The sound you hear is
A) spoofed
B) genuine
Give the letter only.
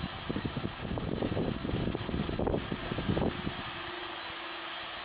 B